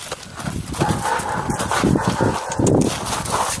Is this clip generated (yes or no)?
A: no